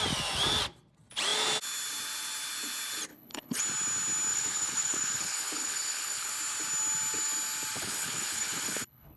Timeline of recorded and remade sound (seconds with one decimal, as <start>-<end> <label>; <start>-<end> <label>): 0.0-3.1 recorded; 3.1-3.6 remade; 3.6-4.3 recorded; 4.3-6.3 remade; 6.3-7.8 recorded; 7.8-9.2 remade